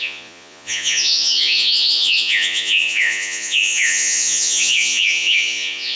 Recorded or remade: remade